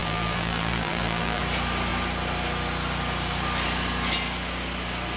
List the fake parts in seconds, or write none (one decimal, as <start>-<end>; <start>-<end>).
0.0-1.4

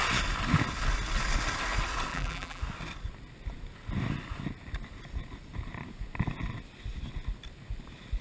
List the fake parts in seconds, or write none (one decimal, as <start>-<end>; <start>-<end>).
2.1-2.6